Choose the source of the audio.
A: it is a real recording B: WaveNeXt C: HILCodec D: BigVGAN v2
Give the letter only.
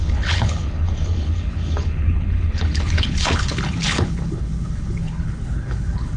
C